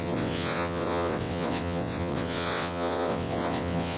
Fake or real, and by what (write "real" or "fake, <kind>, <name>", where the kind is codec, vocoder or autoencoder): fake, vocoder, WaveNeXt